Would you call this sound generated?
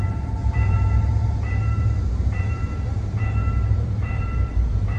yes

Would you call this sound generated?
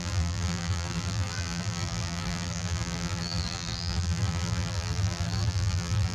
yes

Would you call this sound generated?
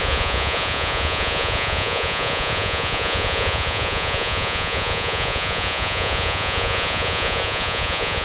yes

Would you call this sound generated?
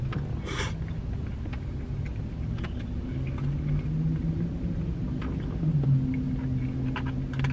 no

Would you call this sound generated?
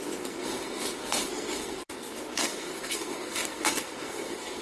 yes